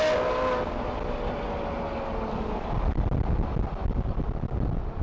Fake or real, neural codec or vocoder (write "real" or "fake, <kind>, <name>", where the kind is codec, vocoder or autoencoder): real